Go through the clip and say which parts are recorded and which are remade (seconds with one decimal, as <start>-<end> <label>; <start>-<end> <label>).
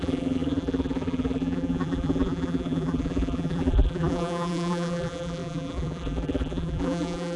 0.0-7.4 remade